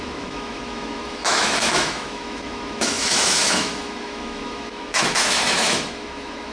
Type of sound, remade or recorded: remade